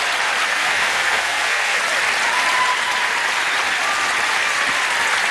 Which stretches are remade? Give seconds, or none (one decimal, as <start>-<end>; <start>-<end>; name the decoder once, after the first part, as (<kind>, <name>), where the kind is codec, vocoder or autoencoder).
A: 0.5-1.8 (codec, SNAC)